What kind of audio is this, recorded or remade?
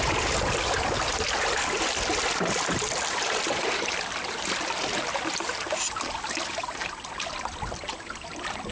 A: recorded